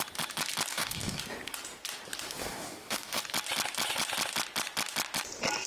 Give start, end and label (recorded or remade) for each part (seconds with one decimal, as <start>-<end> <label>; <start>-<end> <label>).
0.0-0.7 recorded; 0.7-1.2 remade; 1.2-2.4 recorded; 2.4-3.2 remade; 3.2-5.7 recorded